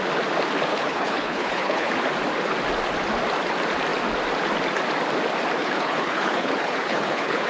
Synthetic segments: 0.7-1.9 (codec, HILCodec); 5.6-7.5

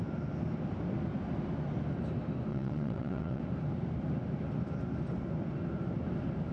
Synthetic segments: 2.5-3.4 (vocoder, WaveNeXt)

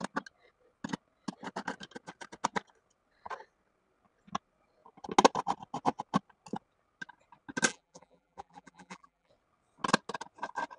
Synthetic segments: 7.7-9.3 (vocoder, BigVGAN v2)

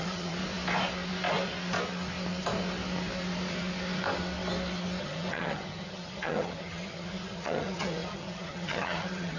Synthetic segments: 0.0-0.4 (vocoder, HiFi-GAN); 5.0-9.4

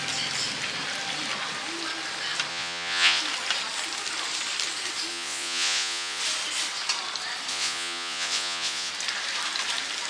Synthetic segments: 2.5-3.2 (vocoder, Vocos); 5.1-6.2; 7.5-8.9

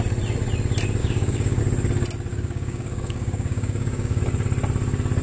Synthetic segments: 1.0-1.6 (codec, DAC); 2.3-4.2

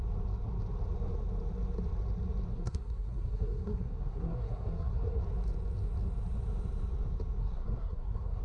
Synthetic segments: 2.5-5.2 (codec, SNAC); 7.4-8.4

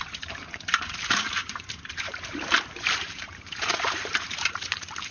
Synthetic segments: 0.0-5.1 (vocoder, BigVGAN v2)